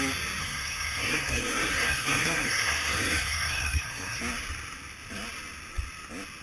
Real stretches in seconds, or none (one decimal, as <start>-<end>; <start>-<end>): 0.0-0.4; 4.2-6.4